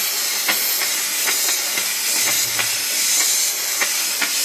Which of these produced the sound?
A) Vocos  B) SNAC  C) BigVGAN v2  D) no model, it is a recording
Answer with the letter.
D